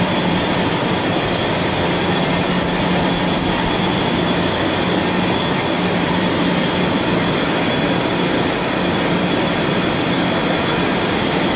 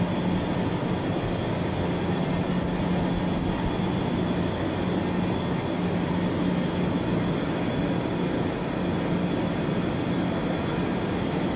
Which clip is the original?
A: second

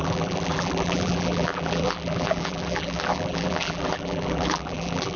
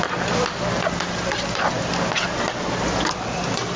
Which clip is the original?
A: second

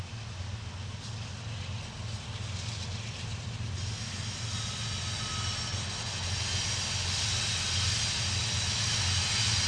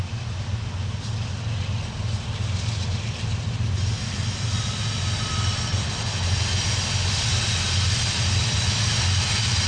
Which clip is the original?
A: first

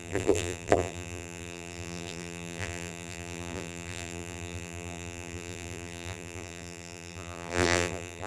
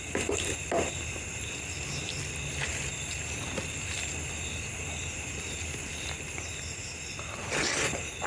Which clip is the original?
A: second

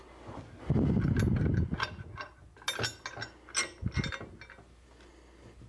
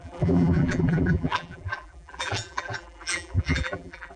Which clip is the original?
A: first